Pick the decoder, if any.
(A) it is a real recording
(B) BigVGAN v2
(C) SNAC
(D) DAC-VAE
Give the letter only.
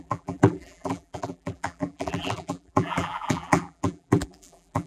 B